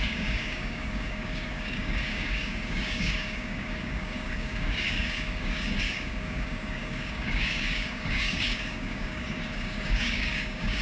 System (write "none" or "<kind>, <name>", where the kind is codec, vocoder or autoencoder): codec, DAC